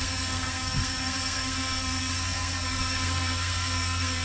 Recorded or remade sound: remade